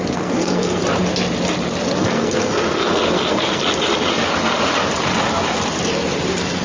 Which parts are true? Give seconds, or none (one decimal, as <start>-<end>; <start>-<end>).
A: 0.8-2.0; 3.6-6.6